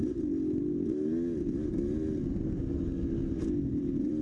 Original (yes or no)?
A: yes